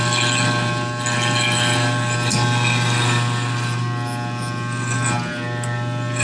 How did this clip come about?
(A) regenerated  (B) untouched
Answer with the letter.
B